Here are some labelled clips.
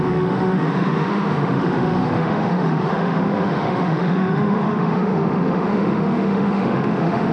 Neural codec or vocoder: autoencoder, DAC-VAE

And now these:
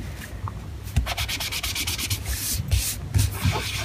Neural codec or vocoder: none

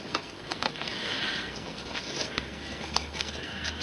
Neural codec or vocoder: codec, SNAC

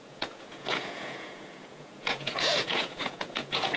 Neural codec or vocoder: vocoder, Vocos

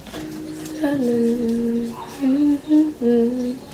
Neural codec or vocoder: none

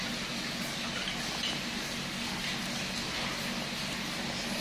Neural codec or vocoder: none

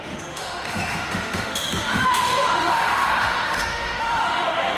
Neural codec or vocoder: autoencoder, DAC-VAE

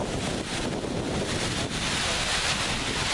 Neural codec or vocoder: none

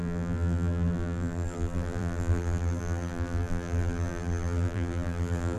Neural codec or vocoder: vocoder, BigVGAN v2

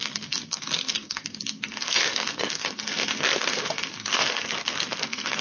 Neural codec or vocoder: codec, SNAC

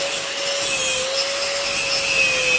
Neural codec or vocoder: none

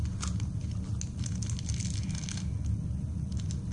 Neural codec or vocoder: none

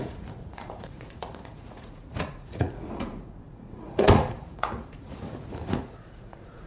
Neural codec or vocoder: vocoder, Vocos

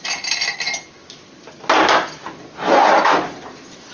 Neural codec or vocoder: none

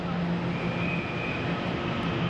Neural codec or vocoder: none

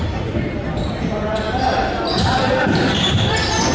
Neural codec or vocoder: none